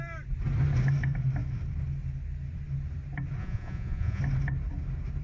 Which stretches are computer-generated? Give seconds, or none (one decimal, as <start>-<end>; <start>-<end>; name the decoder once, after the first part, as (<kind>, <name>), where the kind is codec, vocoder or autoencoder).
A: 3.4-4.2 (vocoder, Vocos)